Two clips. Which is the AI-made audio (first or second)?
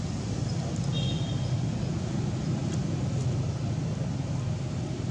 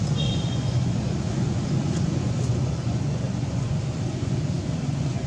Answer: second